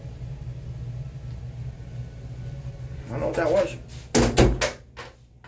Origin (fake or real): real